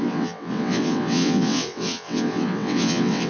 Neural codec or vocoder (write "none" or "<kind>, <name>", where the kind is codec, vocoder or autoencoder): vocoder, WaveNeXt